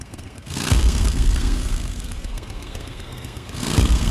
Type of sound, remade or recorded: remade